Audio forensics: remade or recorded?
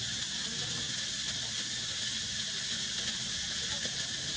recorded